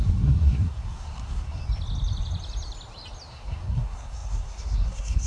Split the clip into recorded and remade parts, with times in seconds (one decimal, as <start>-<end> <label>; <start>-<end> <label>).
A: 0.0-1.6 remade; 1.6-3.3 recorded; 3.3-5.3 remade